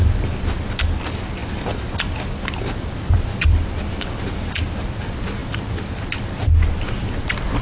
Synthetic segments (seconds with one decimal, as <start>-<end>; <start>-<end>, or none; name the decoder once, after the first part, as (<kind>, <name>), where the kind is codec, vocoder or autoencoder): 0.0-5.4 (vocoder, BigVGAN v2); 6.7-7.6